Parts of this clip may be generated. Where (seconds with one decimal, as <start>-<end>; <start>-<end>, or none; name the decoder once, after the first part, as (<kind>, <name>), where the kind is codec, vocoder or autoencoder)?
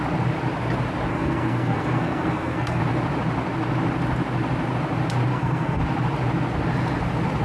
1.1-2.8 (codec, SNAC); 5.3-5.8